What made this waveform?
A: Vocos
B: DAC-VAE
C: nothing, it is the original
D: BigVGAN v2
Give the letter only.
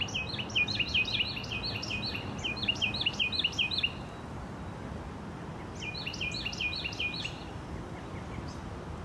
C